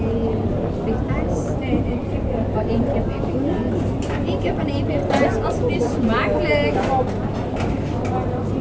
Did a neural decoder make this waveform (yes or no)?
no